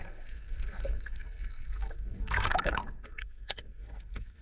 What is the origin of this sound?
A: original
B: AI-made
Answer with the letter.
B